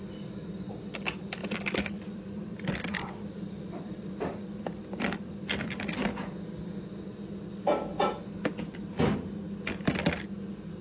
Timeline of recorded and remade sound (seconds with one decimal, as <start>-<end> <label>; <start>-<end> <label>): 0.0-1.4 recorded; 1.4-5.3 remade; 5.3-10.8 recorded